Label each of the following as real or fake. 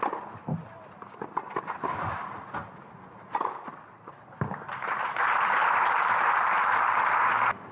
real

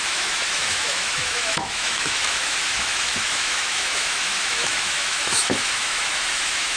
fake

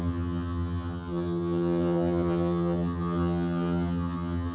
fake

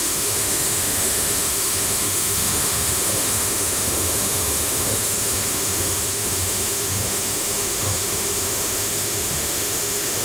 fake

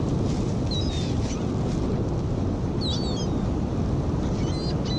real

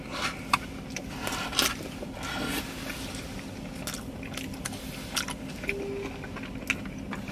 real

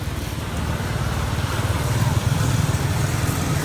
real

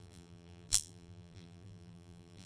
fake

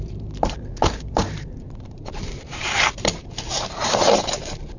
fake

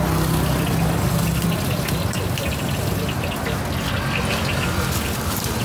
real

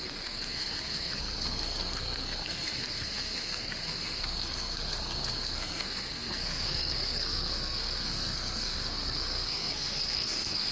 fake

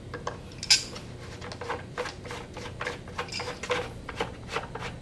real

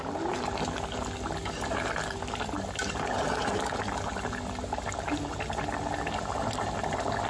real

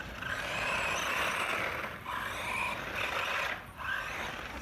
real